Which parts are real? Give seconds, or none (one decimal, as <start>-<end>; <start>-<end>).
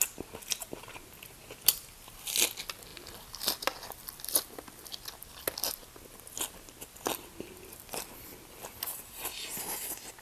0.0-10.2